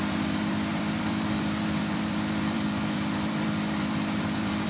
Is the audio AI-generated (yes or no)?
yes